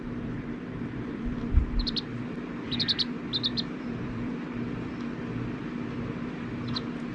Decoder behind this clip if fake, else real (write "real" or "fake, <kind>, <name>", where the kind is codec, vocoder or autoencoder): fake, vocoder, BigVGAN v2